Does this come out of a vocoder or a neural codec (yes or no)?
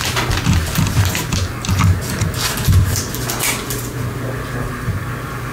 no